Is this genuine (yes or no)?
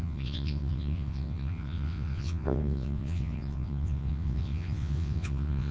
no